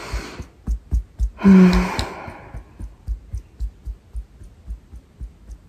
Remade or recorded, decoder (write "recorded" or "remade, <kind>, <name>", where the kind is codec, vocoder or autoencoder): recorded